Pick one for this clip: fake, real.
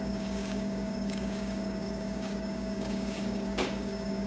fake